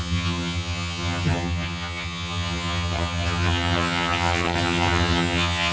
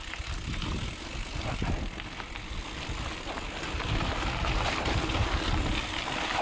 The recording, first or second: second